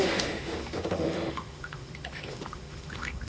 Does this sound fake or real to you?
fake